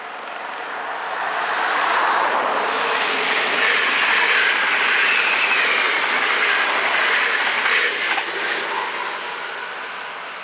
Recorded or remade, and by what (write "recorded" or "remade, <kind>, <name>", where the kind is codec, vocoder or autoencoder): recorded